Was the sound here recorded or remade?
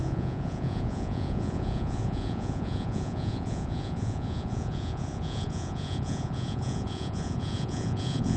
remade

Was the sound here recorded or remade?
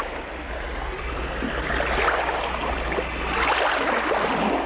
recorded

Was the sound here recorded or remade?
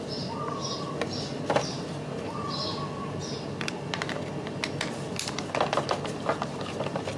recorded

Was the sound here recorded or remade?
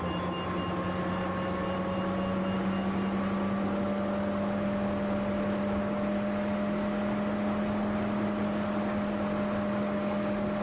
recorded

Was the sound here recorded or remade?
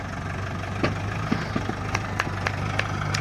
recorded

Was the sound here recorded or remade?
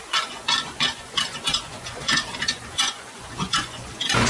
remade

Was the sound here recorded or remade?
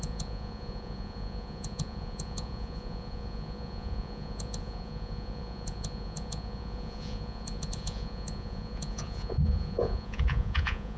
remade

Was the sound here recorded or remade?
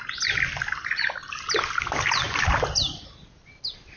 recorded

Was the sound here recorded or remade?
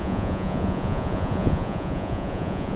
remade